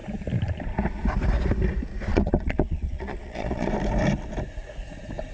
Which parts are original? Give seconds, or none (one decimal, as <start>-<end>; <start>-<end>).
0.0-2.1; 3.7-5.3